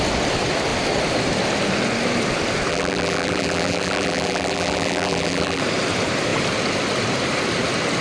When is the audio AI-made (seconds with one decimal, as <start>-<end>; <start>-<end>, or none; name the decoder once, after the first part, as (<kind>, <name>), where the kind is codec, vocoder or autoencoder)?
2.7-5.6 (vocoder, BigVGAN v2)